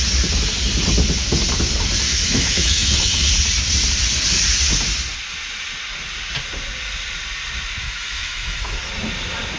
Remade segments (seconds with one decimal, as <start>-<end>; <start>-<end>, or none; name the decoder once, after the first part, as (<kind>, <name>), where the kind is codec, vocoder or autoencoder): 2.1-3.3 (autoencoder, DAC-VAE); 7.8-8.9